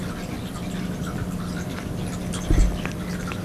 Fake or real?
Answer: real